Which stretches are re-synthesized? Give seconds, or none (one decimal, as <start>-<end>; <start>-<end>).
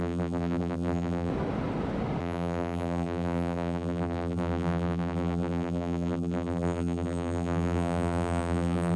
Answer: 0.0-1.3; 2.2-9.0